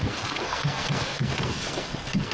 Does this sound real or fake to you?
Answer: fake